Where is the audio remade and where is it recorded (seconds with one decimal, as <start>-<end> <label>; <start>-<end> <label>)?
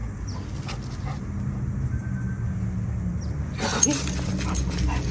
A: 0.0-3.7 recorded; 3.7-5.1 remade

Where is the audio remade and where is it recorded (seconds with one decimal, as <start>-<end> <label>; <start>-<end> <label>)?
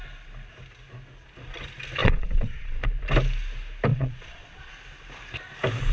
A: 0.0-2.0 recorded; 2.0-2.8 remade; 2.8-3.9 recorded; 3.9-4.7 remade; 4.7-5.9 recorded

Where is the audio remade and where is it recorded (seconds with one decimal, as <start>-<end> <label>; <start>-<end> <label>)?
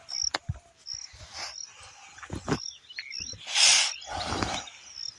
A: 0.0-5.2 recorded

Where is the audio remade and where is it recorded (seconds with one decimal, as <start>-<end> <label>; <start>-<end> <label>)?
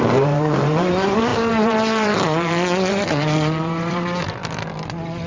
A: 0.0-4.4 remade; 4.4-5.3 recorded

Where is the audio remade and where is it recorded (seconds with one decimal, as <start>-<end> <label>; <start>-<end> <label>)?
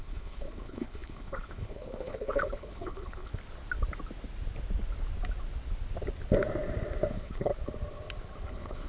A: 0.0-3.3 remade; 3.3-7.1 recorded; 7.1-7.5 remade; 7.5-8.5 recorded; 8.5-8.9 remade